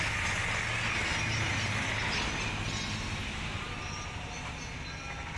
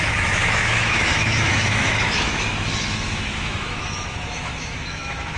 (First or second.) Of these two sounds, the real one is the first